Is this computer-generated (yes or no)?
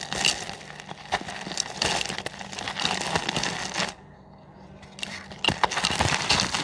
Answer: no